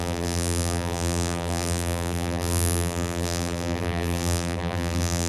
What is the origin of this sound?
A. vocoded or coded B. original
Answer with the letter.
A